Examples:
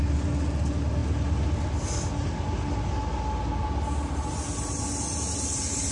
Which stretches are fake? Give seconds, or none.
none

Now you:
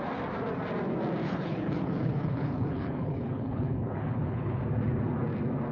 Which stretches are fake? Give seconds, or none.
1.2-4.6 (codec, HILCodec)

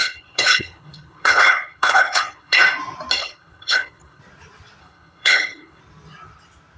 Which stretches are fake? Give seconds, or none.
0.0-2.6 (codec, HILCodec); 3.2-4.2; 4.8-5.8